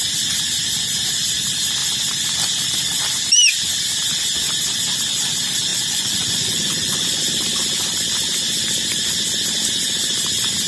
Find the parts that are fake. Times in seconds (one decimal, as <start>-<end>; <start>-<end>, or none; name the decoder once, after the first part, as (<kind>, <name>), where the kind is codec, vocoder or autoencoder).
5.7-7.2 (vocoder, Vocos)